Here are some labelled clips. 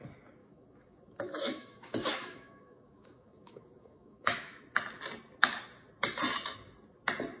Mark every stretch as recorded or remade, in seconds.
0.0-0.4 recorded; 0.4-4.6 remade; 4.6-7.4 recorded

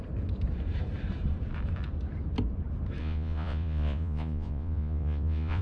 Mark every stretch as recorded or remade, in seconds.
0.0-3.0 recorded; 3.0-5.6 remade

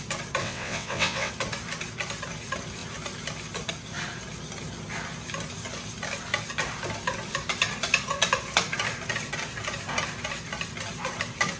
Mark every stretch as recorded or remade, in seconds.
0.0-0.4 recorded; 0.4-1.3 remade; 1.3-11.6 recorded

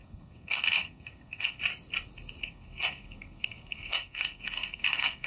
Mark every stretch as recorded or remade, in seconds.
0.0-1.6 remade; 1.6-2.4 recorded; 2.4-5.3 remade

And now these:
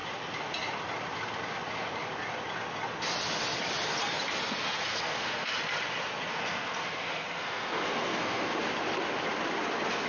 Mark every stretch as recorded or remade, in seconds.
0.0-4.9 recorded; 4.9-5.5 remade; 5.5-6.3 recorded; 6.3-8.5 remade; 8.5-10.1 recorded